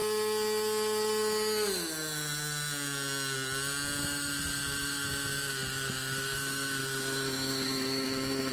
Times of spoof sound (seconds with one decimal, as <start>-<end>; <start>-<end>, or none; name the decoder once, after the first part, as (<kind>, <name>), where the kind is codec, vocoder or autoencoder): 4.0-8.5 (autoencoder, DAC-VAE)